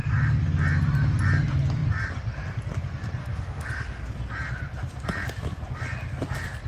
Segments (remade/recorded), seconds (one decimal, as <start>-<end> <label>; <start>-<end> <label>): 0.0-3.2 recorded; 3.2-4.0 remade; 4.0-6.7 recorded